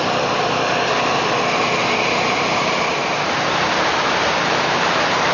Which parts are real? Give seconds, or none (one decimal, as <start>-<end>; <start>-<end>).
0.0-1.8